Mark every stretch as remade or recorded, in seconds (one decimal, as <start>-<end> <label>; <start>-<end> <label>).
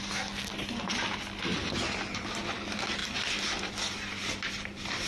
0.0-3.0 recorded; 3.0-5.1 remade